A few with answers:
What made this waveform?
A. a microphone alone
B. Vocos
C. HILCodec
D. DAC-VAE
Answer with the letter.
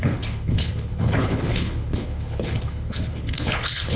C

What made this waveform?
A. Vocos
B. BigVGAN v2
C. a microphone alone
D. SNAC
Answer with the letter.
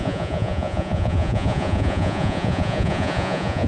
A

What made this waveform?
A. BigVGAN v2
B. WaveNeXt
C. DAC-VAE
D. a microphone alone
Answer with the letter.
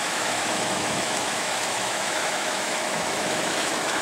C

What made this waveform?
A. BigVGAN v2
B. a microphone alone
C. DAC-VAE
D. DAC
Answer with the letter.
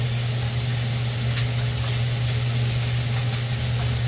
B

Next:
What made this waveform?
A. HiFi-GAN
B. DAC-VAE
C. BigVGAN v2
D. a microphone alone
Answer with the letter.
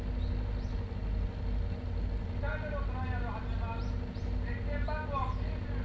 D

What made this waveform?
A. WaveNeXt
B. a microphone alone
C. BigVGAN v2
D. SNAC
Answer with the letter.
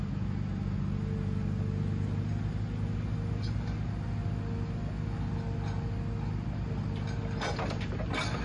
B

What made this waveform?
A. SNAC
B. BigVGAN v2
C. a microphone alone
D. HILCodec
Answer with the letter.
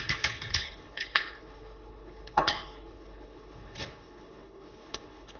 D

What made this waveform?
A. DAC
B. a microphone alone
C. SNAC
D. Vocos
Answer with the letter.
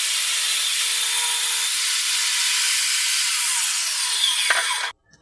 B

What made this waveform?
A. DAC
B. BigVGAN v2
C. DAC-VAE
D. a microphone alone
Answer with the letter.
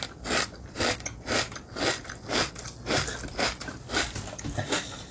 D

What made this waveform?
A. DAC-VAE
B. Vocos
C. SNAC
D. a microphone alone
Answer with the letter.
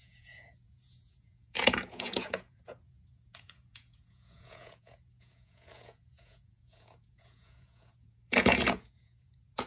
B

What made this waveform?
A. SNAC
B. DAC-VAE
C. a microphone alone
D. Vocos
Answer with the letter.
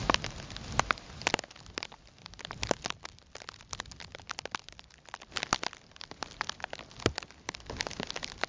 C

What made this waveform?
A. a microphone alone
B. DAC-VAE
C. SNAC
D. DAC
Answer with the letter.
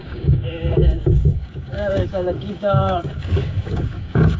D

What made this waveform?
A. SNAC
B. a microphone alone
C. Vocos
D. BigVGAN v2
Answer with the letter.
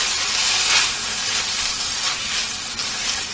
B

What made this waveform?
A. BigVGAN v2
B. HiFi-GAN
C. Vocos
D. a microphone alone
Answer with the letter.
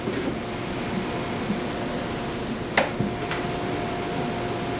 D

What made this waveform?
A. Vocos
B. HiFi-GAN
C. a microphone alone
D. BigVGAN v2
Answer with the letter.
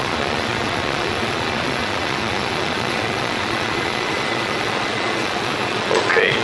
A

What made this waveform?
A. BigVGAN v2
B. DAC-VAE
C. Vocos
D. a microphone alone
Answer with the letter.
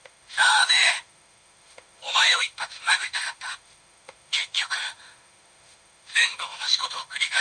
B